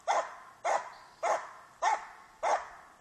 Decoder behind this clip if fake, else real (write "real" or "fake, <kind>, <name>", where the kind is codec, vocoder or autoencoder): real